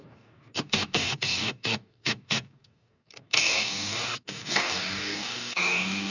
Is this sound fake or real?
fake